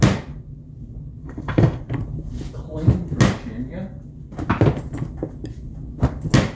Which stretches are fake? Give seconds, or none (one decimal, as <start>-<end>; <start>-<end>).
1.2-1.8